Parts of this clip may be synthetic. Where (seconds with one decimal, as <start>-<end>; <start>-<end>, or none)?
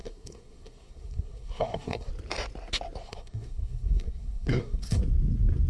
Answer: 0.0-2.1; 3.0-5.0